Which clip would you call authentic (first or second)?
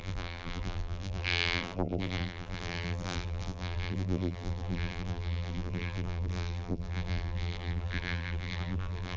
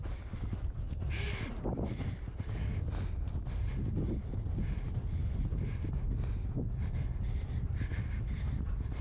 second